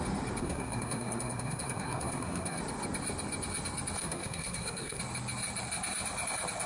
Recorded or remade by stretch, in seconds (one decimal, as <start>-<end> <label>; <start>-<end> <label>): 0.0-0.4 recorded; 0.4-2.6 remade; 2.6-4.0 recorded; 4.0-5.0 remade; 5.0-6.7 recorded